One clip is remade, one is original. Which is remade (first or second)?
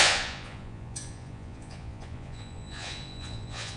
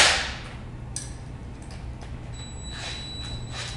first